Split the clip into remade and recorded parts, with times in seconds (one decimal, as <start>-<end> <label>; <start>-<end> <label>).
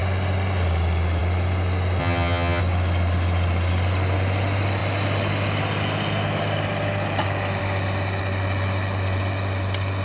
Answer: 0.0-2.0 recorded; 2.0-2.6 remade; 2.6-10.0 recorded